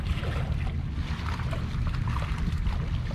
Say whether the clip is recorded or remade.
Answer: recorded